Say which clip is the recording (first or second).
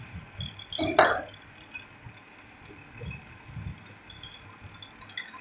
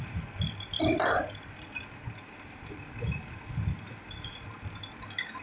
first